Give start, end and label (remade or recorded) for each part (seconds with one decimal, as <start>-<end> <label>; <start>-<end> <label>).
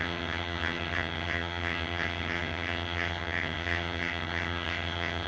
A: 0.0-5.3 remade